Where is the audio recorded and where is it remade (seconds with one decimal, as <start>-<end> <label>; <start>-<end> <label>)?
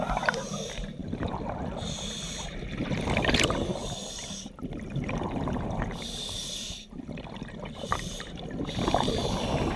0.0-9.8 recorded